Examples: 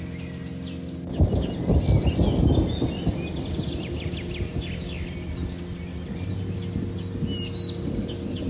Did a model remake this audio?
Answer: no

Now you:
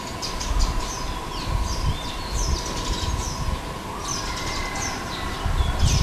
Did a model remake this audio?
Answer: no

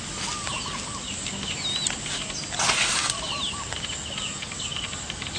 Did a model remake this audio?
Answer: no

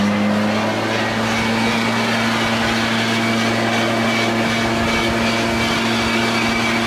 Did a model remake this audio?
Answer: no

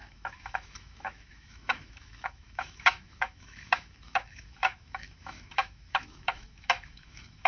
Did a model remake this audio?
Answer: yes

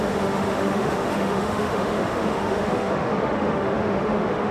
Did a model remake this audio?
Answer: yes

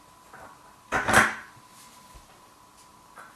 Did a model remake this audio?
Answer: no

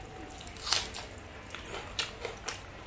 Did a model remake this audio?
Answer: no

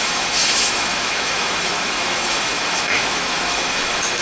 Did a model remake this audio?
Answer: yes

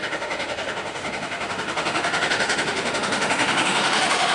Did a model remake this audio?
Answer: yes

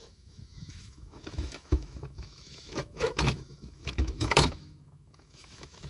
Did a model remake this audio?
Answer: yes